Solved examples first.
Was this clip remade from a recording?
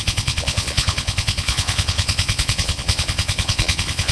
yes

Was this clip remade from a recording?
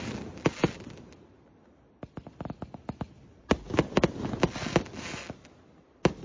no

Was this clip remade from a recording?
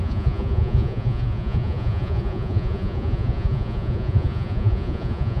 yes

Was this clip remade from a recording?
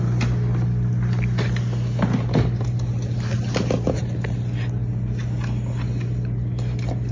no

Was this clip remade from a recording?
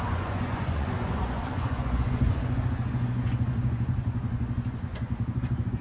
yes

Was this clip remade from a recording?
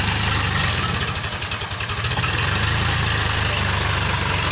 no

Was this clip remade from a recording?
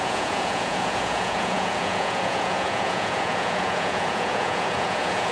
yes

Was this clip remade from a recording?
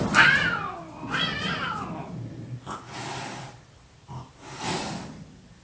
no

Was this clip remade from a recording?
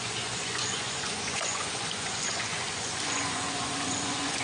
yes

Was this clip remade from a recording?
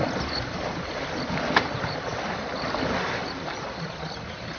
no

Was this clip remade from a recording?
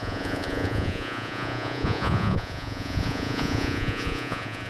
yes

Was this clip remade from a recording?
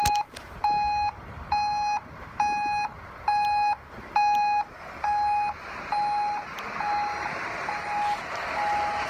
no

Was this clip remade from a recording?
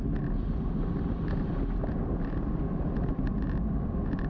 no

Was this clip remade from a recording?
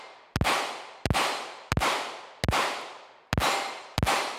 no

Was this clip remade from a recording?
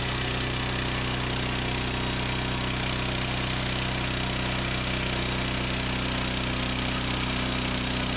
no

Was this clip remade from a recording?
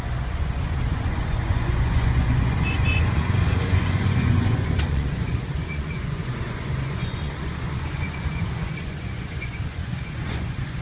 yes